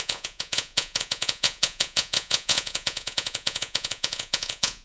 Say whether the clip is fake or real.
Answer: fake